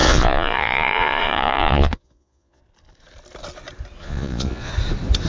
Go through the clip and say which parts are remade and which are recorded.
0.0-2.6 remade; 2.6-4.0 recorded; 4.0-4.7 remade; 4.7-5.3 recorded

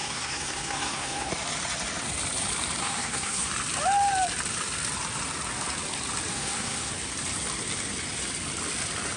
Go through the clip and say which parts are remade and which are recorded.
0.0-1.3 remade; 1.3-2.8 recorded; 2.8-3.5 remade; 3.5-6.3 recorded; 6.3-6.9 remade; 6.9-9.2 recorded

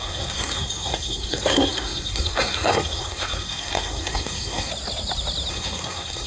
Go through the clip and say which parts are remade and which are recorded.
0.0-4.7 remade; 4.7-5.5 recorded; 5.5-6.3 remade

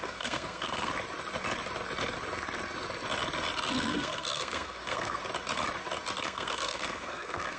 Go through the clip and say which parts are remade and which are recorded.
0.0-0.9 remade; 0.9-3.7 recorded; 3.7-5.2 remade; 5.2-6.2 recorded; 6.2-7.6 remade

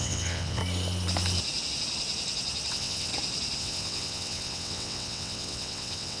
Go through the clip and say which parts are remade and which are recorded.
0.0-0.6 remade; 0.6-2.7 recorded; 2.7-3.1 remade; 3.1-3.6 recorded; 3.6-6.2 remade

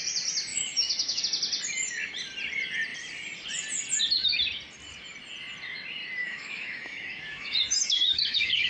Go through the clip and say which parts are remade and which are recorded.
0.0-0.5 recorded; 0.5-1.2 remade; 1.2-6.2 recorded; 6.2-8.7 remade

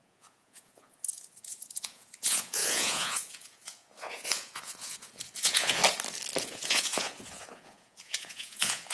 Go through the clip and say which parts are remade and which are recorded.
0.0-5.8 remade; 5.8-6.4 recorded; 6.4-8.9 remade